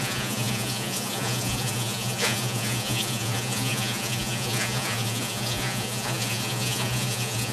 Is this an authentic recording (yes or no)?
no